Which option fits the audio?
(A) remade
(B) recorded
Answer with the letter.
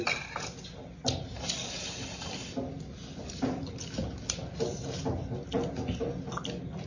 B